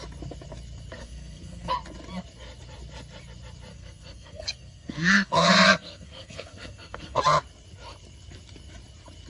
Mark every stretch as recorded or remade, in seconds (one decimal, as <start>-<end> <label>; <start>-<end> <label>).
0.0-1.0 recorded; 1.0-1.7 remade; 1.7-3.7 recorded; 3.7-7.2 remade; 7.2-9.3 recorded